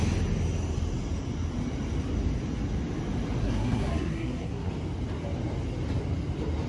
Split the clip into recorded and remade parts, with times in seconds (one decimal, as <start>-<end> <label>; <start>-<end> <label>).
0.0-3.4 recorded; 3.4-4.7 remade; 4.7-6.7 recorded